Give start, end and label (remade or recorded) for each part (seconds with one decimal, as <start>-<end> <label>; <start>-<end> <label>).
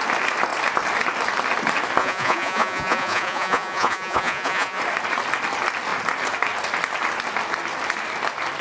0.0-2.0 recorded; 2.0-4.8 remade; 4.8-8.6 recorded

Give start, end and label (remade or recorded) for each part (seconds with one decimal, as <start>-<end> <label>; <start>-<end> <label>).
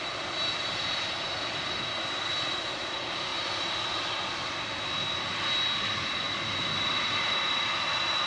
0.0-8.3 recorded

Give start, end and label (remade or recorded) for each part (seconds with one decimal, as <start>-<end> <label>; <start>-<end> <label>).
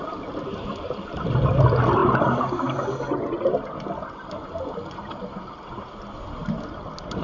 0.0-7.2 recorded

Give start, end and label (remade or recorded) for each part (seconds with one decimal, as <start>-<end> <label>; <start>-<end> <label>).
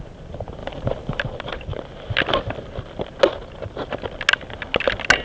0.0-5.2 recorded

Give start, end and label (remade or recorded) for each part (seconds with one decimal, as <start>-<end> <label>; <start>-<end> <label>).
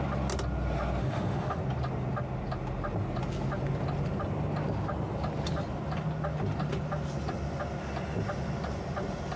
0.0-1.0 recorded; 1.0-1.6 remade; 1.6-9.4 recorded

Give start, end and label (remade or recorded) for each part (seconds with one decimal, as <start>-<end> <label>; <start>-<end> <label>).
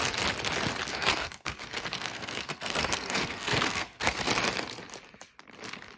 0.0-0.9 recorded; 0.9-4.2 remade; 4.2-6.0 recorded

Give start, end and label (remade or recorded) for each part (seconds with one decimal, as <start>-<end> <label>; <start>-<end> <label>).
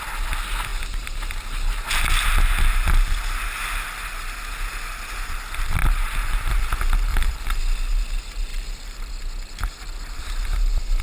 0.0-7.1 recorded; 7.1-7.6 remade; 7.6-8.5 recorded; 8.5-9.1 remade; 9.1-11.0 recorded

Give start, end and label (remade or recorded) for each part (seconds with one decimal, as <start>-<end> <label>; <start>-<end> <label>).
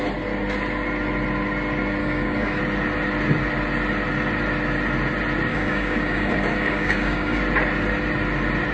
0.0-2.0 recorded; 2.0-2.6 remade; 2.6-5.5 recorded; 5.5-7.4 remade; 7.4-8.7 recorded